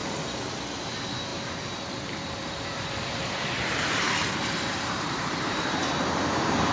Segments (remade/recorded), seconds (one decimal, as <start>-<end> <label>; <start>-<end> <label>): 0.0-1.3 recorded; 1.3-4.0 remade; 4.0-4.7 recorded; 4.7-6.2 remade; 6.2-6.7 recorded